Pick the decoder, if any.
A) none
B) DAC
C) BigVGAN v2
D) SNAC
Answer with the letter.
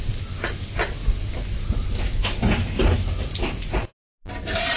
A